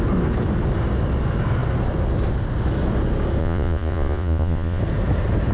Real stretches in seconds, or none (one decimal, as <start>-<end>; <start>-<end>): 0.0-3.4; 4.8-5.5